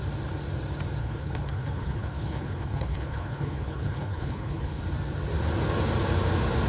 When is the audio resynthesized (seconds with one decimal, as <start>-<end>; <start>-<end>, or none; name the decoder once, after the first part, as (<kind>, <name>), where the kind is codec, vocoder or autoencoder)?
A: 1.0-4.8 (codec, HILCodec)